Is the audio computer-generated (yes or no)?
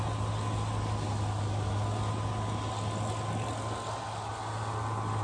no